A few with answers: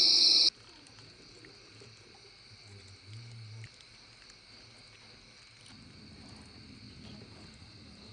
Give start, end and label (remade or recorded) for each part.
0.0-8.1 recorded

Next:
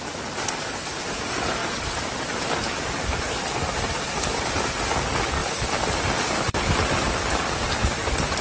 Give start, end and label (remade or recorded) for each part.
0.0-8.4 recorded

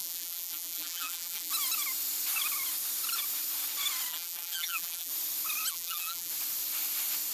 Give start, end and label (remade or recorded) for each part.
0.0-1.5 remade; 1.5-4.1 recorded; 4.1-5.1 remade; 5.1-5.7 recorded; 5.7-6.3 remade; 6.3-7.3 recorded

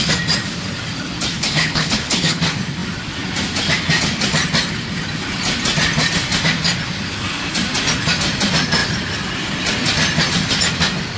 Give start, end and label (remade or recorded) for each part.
0.0-1.3 recorded; 1.3-2.4 remade; 2.4-11.2 recorded

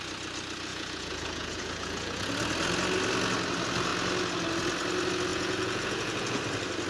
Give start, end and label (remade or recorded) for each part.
0.0-0.7 recorded; 0.7-2.3 remade; 2.3-5.3 recorded; 5.3-6.4 remade; 6.4-6.9 recorded

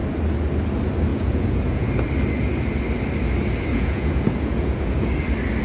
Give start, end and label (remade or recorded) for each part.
0.0-1.1 recorded; 1.1-1.9 remade; 1.9-3.7 recorded; 3.7-5.1 remade; 5.1-5.6 recorded

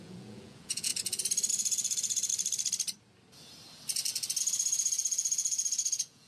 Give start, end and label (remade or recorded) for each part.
0.0-0.9 remade; 0.9-1.5 recorded; 1.5-2.3 remade; 2.3-4.4 recorded; 4.4-6.3 remade